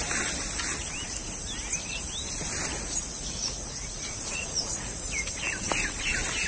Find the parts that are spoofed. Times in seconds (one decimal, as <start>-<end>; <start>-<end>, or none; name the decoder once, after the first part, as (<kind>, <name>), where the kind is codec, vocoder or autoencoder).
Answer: 2.7-5.3 (vocoder, Vocos)